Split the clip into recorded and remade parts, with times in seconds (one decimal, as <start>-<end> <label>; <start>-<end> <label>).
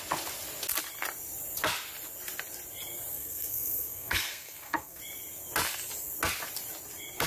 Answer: 0.0-3.1 recorded; 3.1-5.0 remade; 5.0-7.3 recorded